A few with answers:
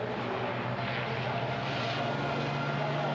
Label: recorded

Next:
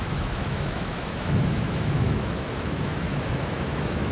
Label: remade